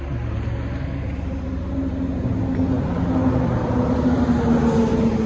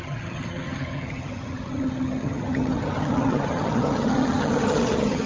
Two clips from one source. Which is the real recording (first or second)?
first